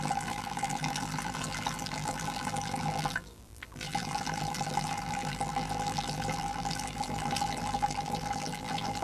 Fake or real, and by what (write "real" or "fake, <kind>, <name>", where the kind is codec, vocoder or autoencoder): fake, vocoder, BigVGAN v2